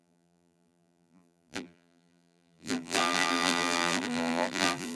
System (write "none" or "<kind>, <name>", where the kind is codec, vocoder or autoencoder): vocoder, BigVGAN v2